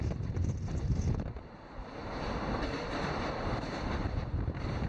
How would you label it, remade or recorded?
remade